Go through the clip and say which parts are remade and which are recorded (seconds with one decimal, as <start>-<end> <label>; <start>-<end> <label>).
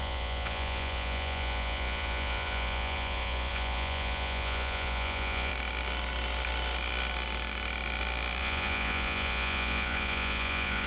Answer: 0.0-5.5 remade; 5.5-8.4 recorded; 8.4-10.9 remade